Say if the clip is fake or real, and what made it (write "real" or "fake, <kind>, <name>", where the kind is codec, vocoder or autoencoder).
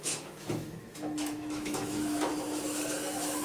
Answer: fake, autoencoder, DAC-VAE